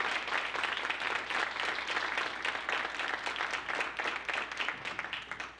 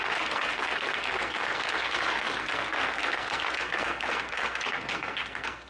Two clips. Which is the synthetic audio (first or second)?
second